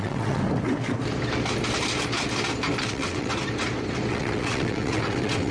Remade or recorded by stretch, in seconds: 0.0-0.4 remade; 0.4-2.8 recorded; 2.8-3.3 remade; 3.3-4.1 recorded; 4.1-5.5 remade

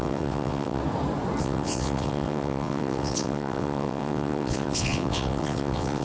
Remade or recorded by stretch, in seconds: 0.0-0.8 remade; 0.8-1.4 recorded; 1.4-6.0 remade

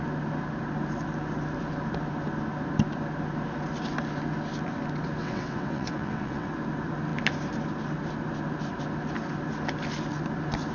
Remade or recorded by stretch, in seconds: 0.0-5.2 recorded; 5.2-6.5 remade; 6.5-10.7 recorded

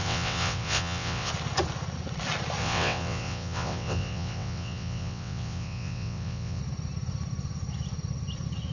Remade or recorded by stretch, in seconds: 0.0-1.3 remade; 1.3-2.6 recorded; 2.6-6.6 remade; 6.6-8.7 recorded